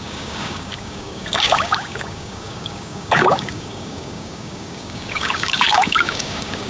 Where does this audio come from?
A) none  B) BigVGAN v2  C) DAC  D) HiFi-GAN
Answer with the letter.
C